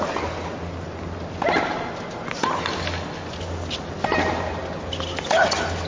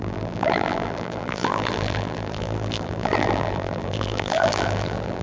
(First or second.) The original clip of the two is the first